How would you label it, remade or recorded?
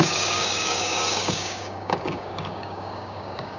remade